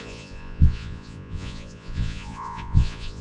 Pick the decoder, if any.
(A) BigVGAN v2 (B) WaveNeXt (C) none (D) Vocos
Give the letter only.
D